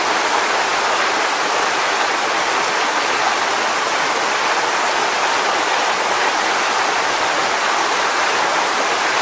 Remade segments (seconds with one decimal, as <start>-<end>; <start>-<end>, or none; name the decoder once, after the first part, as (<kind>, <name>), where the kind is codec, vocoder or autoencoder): none